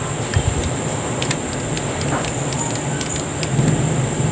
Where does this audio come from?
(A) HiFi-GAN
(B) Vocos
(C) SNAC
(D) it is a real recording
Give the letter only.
D